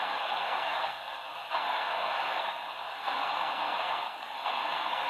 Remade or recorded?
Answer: remade